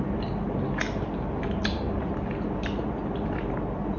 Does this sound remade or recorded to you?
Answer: recorded